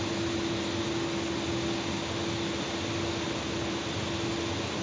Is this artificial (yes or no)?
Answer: no